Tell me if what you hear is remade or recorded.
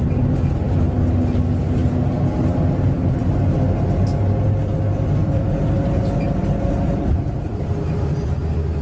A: recorded